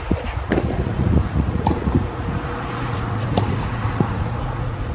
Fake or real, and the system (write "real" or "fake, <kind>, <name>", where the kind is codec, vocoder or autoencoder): fake, vocoder, Vocos